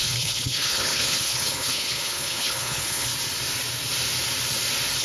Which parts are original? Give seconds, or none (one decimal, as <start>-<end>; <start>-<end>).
3.1-5.0